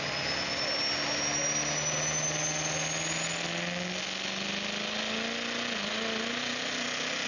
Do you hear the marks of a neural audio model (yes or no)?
no